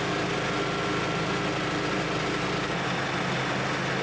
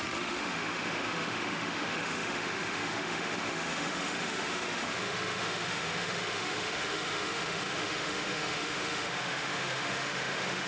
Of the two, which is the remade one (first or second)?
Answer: second